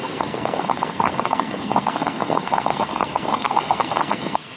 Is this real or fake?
fake